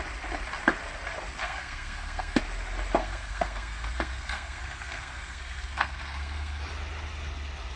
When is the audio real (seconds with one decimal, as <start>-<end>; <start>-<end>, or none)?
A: 0.0-1.4; 2.4-3.0; 6.6-7.8